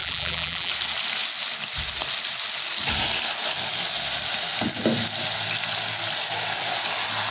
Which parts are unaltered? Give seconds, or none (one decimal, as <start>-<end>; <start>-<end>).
0.7-7.3